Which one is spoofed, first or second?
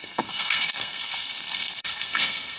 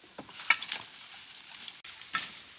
first